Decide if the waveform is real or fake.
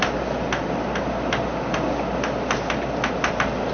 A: real